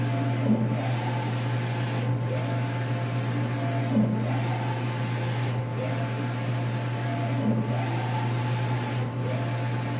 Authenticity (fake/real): real